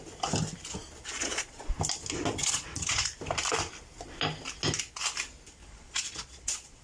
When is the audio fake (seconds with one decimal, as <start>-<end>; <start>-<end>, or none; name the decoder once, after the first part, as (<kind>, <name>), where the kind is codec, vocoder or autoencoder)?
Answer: 1.0-1.6 (vocoder, Vocos); 2.4-3.1; 5.6-6.8